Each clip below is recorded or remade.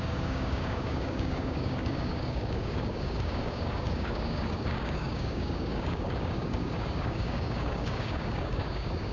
remade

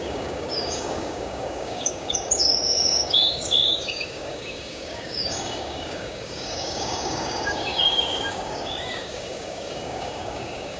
remade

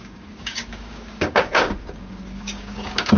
remade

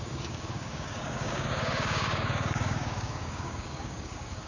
remade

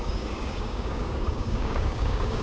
remade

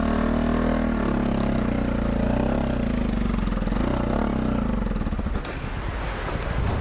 recorded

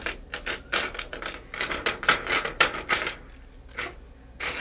recorded